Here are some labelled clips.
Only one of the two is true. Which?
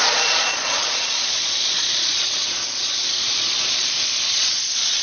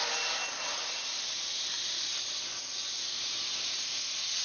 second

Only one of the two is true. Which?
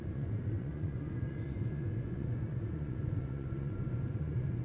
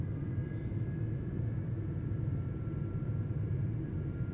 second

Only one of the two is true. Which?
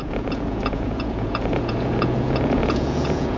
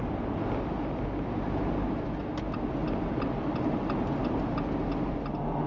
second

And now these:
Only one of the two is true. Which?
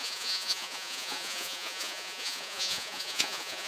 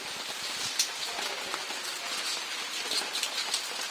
second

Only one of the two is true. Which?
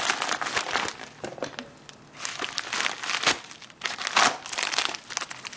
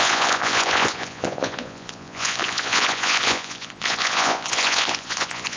first